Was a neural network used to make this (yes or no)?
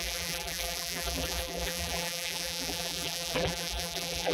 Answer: yes